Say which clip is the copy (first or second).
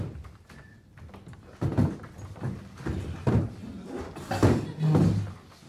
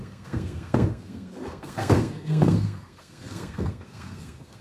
second